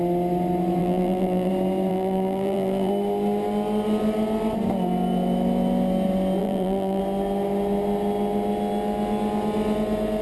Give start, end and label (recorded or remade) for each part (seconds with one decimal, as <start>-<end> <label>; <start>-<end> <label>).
0.0-0.8 recorded; 0.8-1.5 remade; 1.5-1.9 recorded; 1.9-2.9 remade; 2.9-6.4 recorded; 6.4-7.0 remade; 7.0-10.2 recorded